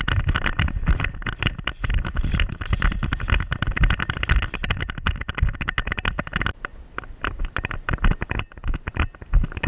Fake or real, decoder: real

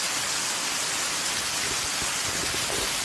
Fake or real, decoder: real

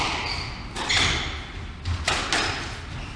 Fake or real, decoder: real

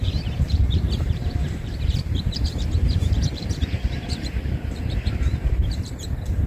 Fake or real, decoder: fake, vocoder, BigVGAN v2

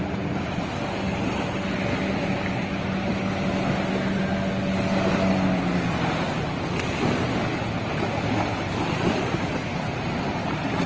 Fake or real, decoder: real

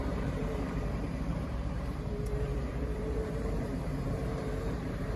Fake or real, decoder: fake, vocoder, BigVGAN v2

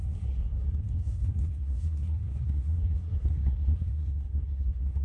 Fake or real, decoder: fake, codec, SNAC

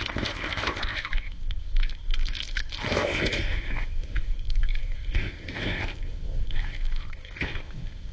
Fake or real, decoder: fake, codec, ZipCodec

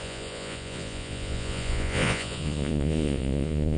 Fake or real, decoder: fake, vocoder, Vocos